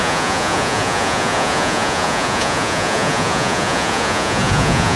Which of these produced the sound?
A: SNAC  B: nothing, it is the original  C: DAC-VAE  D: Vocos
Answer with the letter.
D